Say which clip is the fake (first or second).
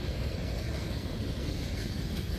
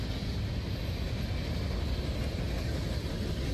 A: first